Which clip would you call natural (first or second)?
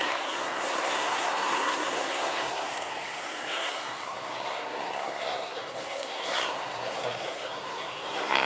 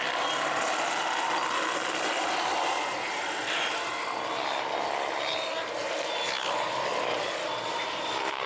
second